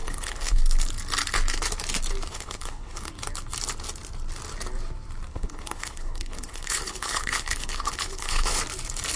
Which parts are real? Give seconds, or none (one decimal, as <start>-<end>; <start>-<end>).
0.6-2.3; 3.1-5.3; 8.6-9.2